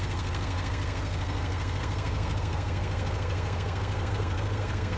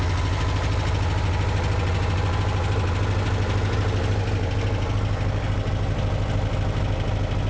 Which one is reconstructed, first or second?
first